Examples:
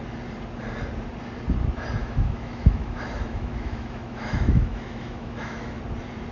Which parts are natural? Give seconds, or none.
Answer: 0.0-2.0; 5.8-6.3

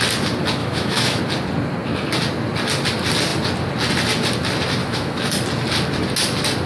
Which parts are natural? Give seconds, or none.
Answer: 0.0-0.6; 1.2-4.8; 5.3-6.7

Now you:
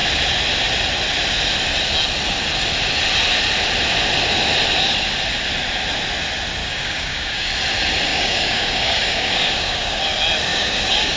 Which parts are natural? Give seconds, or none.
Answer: 0.0-6.6; 7.5-8.1; 10.0-10.5

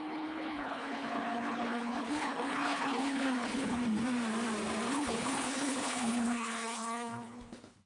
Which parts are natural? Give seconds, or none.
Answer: 3.8-4.9

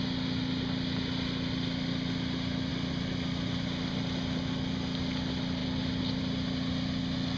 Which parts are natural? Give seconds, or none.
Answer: 0.0-7.4

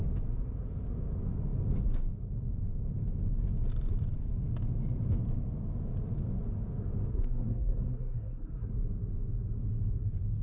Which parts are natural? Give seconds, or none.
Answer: 0.0-7.1; 8.7-10.4

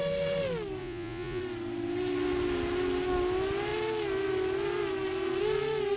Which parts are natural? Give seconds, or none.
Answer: 0.0-0.8; 1.4-6.0

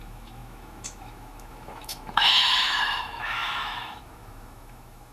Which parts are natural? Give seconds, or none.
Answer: none